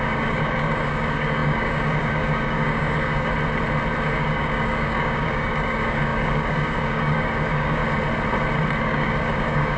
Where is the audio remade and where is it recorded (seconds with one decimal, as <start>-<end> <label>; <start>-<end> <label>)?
0.0-3.3 remade; 3.3-4.0 recorded; 4.0-7.8 remade; 7.8-8.8 recorded; 8.8-9.8 remade